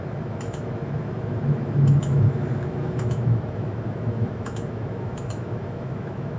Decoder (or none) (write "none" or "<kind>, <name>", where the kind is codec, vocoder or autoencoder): autoencoder, DAC-VAE